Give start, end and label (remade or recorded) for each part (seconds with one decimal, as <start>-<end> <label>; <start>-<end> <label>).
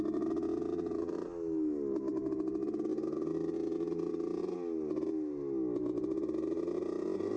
0.0-7.4 recorded